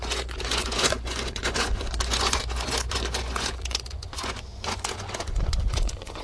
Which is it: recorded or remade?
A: remade